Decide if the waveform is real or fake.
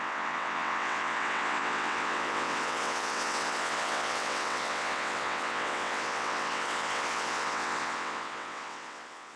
fake